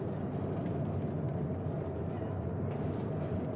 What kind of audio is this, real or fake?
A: fake